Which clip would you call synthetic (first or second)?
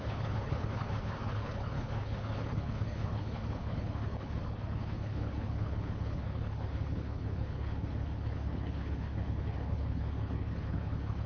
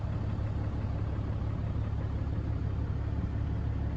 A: first